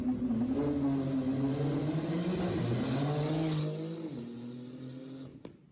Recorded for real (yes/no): yes